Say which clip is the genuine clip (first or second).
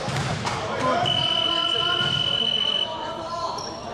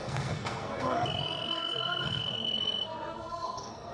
first